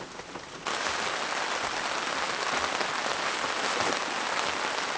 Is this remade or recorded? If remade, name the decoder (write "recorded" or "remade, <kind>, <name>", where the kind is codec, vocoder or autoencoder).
recorded